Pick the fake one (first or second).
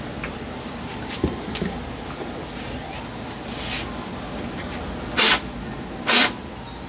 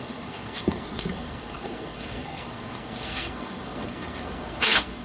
second